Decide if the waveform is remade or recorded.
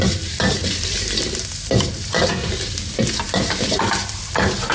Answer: recorded